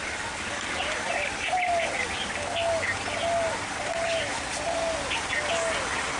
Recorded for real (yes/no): yes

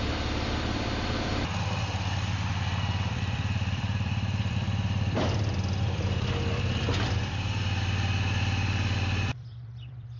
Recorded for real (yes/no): no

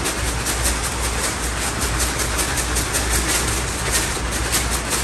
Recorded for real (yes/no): yes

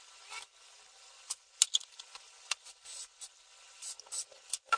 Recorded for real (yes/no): yes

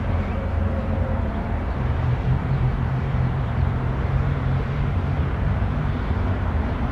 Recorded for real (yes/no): no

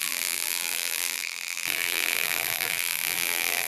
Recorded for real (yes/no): no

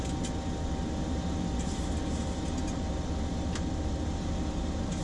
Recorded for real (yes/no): yes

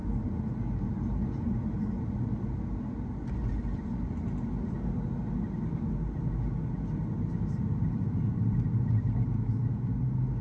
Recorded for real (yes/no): yes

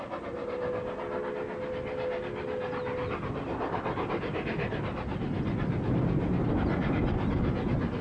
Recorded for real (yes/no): yes